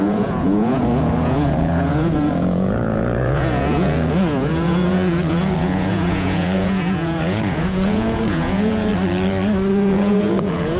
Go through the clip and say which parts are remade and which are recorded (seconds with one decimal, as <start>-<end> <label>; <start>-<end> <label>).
0.0-8.9 remade; 8.9-9.7 recorded; 9.7-10.8 remade